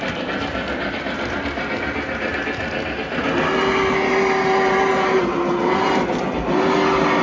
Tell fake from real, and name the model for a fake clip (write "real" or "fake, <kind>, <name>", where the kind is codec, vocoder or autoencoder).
real